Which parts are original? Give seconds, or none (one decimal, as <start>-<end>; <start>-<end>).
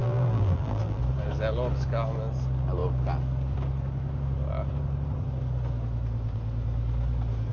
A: 1.0-7.5